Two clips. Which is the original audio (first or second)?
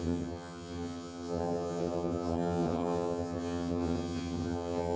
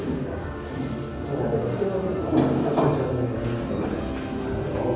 second